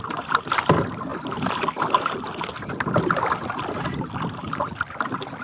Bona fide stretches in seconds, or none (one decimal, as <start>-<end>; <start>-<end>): 1.1-1.7